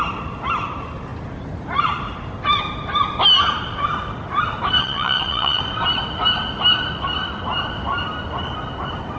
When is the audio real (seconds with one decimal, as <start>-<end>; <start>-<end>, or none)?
0.0-4.8; 5.6-9.2